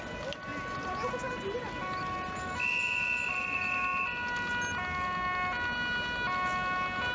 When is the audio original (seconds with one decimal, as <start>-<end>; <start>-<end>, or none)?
0.0-7.1